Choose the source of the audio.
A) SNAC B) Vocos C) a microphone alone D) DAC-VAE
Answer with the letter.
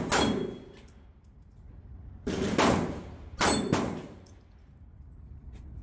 C